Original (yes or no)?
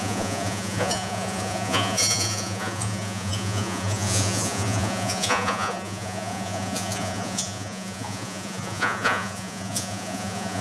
no